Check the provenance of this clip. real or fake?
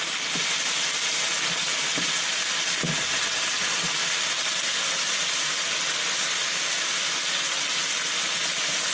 real